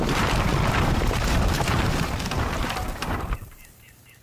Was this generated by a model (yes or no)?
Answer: yes